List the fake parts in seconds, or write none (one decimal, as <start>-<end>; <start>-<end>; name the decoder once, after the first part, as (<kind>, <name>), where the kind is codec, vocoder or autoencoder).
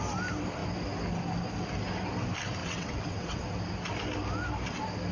2.6-3.4 (vocoder, WaveNeXt)